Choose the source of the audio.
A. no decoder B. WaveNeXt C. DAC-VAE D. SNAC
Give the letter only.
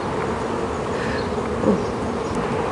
A